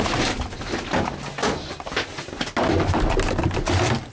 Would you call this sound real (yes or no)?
yes